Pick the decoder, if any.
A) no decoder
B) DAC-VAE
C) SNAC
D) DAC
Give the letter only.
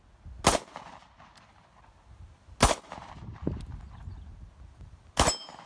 A